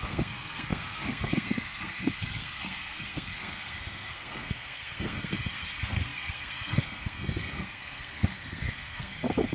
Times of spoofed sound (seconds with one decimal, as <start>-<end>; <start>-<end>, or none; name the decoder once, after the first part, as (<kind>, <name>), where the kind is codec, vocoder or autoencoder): 0.0-9.5 (codec, SNAC)